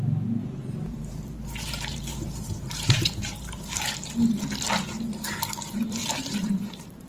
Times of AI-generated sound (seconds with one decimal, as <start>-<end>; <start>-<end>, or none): 0.4-4.1; 6.0-7.1